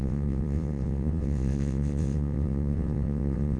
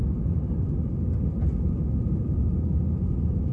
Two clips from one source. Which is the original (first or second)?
second